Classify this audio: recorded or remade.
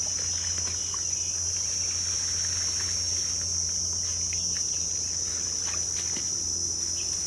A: recorded